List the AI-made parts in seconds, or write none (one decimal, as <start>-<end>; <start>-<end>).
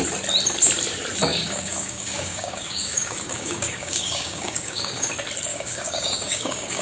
1.3-5.1; 5.5-6.8